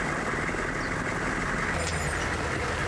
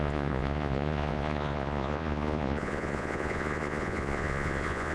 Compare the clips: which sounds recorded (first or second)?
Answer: first